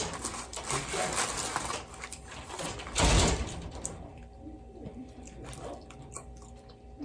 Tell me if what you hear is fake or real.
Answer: fake